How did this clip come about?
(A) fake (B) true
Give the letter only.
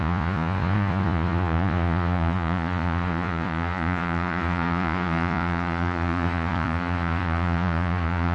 A